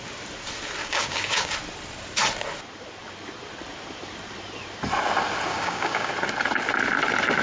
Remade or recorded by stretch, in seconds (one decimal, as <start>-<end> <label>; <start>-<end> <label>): 0.0-0.8 recorded; 0.8-1.5 remade; 1.5-5.5 recorded; 5.5-6.1 remade; 6.1-7.4 recorded